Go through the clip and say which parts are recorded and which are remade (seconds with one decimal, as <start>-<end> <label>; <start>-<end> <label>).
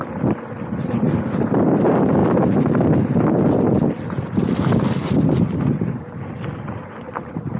0.0-7.6 recorded